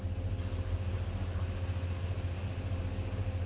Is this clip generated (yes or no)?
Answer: no